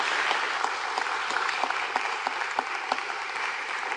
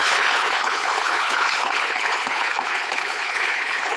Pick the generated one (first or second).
second